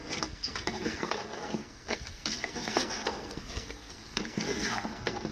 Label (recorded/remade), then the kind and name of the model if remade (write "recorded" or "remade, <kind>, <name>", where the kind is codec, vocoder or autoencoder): remade, codec, SNAC